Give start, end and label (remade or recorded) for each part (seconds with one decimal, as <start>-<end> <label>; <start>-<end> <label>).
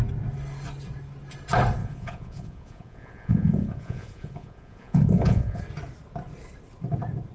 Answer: 0.0-1.8 recorded; 1.8-5.6 remade; 5.6-7.3 recorded